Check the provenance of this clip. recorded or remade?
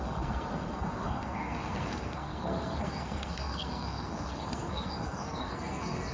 remade